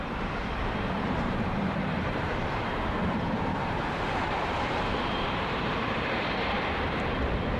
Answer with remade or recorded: remade